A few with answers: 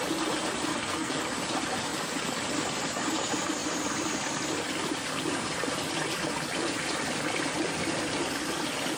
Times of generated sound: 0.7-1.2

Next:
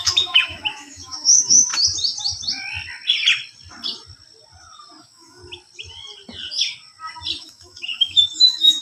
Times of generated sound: 0.0-1.7; 5.0-5.4; 7.4-8.8

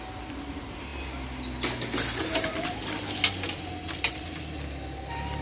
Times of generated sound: none